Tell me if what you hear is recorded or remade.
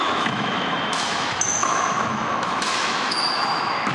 remade